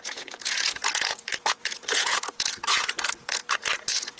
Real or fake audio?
fake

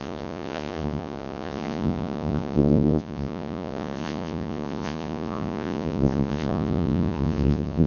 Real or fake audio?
fake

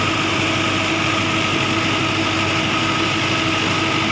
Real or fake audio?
real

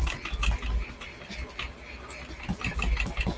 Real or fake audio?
real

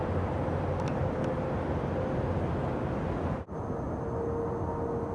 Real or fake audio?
real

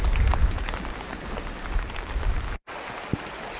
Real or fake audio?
real